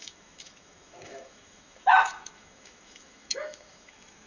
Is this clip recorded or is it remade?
remade